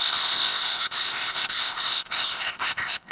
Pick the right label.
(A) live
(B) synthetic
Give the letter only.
B